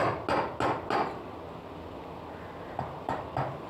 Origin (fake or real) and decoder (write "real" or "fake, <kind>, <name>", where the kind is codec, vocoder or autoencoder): real